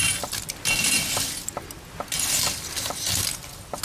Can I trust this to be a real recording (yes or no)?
yes